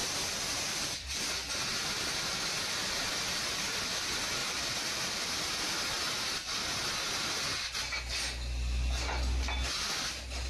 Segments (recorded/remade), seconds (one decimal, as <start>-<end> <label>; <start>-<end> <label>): 0.0-1.2 remade; 1.2-4.4 recorded; 4.4-5.5 remade; 5.5-10.5 recorded